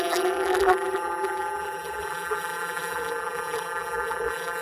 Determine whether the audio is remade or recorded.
remade